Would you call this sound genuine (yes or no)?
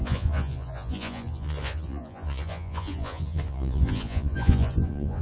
no